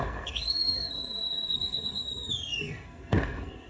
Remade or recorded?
remade